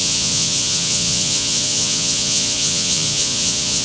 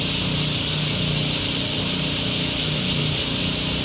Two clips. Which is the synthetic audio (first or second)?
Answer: first